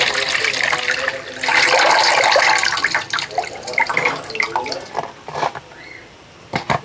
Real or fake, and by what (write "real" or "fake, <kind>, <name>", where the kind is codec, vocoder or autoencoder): real